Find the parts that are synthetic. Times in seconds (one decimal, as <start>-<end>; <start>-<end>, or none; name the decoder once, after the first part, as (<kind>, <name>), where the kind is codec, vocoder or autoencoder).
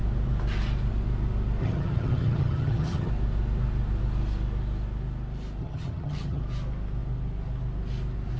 1.6-3.1 (vocoder, HiFi-GAN); 5.6-6.4